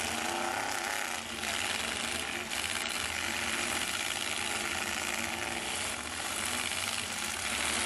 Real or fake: real